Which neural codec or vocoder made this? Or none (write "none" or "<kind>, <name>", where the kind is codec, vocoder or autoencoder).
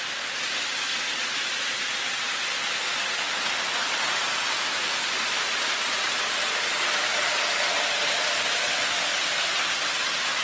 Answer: none